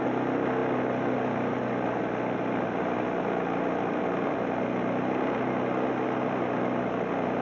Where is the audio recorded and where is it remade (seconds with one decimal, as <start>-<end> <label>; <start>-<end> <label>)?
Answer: 0.0-7.4 recorded